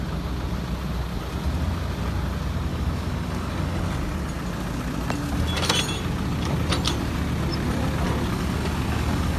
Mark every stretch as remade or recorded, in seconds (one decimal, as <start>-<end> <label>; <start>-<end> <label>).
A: 0.0-2.7 recorded; 2.7-3.8 remade; 3.8-8.3 recorded; 8.3-9.4 remade